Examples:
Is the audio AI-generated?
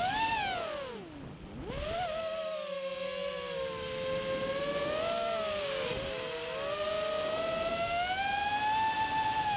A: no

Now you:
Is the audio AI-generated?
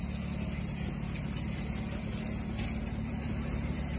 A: no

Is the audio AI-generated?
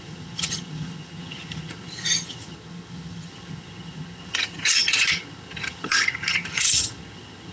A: yes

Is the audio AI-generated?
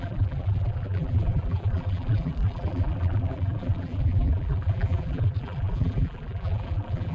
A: yes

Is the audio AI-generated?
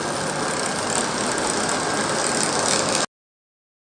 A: no